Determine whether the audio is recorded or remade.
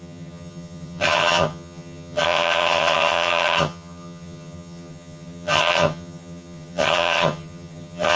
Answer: remade